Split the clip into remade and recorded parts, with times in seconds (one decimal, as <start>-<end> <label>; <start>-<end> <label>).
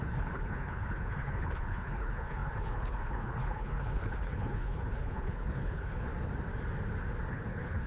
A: 0.0-6.1 remade; 6.1-7.3 recorded; 7.3-7.9 remade